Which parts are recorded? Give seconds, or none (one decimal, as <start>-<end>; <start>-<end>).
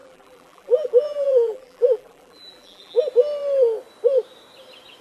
3.0-5.0